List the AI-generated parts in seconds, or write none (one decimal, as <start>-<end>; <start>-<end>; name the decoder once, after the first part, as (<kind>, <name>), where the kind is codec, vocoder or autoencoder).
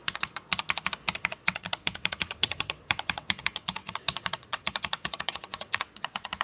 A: 0.0-0.5 (vocoder, WaveNeXt); 1.2-6.4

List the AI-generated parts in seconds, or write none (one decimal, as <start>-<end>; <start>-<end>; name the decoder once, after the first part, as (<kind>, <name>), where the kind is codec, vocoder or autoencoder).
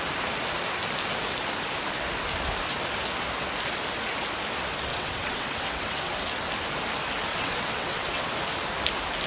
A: 4.9-6.1 (vocoder, WaveNeXt); 7.3-8.3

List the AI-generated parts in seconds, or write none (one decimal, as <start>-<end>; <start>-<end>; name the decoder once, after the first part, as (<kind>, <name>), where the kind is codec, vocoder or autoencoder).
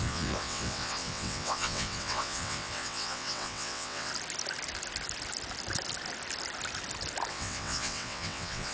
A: 0.0-4.1 (vocoder, WaveNeXt); 7.3-8.7